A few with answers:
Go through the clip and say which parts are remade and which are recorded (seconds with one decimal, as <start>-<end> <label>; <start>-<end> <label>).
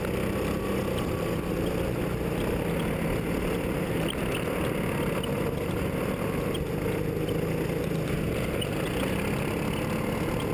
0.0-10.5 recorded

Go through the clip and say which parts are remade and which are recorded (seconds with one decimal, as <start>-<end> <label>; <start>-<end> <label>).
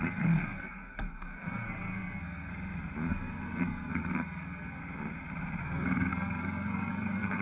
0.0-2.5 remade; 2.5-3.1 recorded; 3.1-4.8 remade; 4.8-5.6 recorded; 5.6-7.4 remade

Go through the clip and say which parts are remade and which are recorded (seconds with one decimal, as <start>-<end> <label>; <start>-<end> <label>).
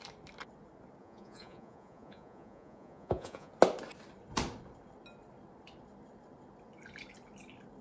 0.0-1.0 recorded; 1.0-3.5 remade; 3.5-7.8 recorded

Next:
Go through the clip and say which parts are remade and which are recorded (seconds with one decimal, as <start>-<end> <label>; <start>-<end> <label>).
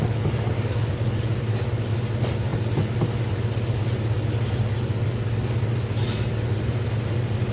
0.0-7.5 recorded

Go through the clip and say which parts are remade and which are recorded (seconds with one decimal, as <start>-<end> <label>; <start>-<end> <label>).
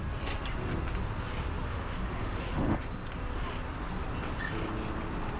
0.0-1.6 recorded; 1.6-2.8 remade; 2.8-5.4 recorded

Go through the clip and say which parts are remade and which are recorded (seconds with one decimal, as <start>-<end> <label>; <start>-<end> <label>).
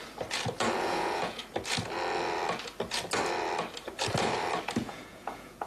0.0-0.8 recorded; 0.8-1.4 remade; 1.4-4.8 recorded; 4.8-5.7 remade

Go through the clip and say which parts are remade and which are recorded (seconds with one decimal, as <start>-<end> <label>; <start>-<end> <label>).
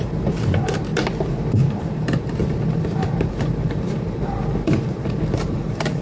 0.0-0.9 remade; 0.9-1.8 recorded; 1.8-2.4 remade; 2.4-2.9 recorded; 2.9-6.0 remade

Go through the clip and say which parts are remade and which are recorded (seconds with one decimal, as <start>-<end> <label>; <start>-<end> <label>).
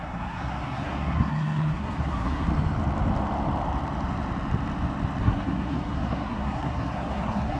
0.0-2.5 remade; 2.5-5.2 recorded; 5.2-7.6 remade